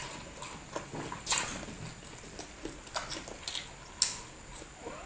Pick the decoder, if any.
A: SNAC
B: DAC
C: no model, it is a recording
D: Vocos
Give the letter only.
C